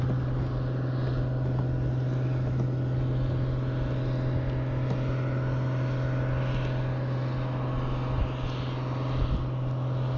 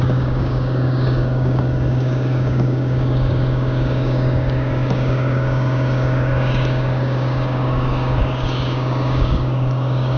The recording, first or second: first